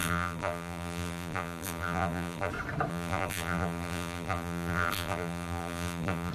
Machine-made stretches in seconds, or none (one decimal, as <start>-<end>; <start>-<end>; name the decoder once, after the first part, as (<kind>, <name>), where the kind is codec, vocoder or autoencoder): 0.0-2.5 (vocoder, BigVGAN v2); 2.9-6.3